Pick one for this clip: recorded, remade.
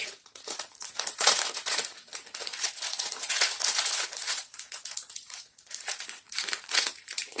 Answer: remade